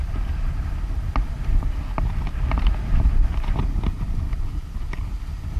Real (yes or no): yes